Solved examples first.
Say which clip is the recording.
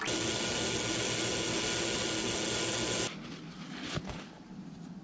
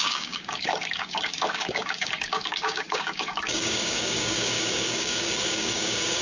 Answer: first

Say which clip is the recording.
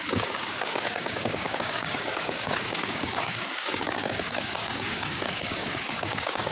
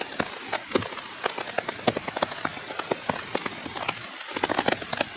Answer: second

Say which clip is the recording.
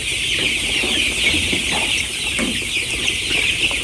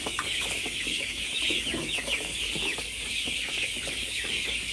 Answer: first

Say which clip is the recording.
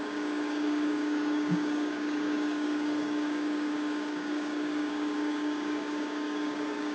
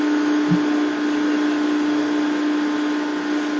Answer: second